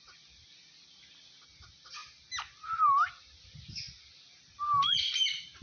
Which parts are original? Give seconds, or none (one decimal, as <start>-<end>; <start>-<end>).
0.0-5.6